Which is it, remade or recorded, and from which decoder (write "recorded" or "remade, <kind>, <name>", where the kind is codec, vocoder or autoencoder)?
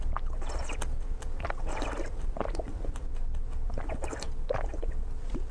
recorded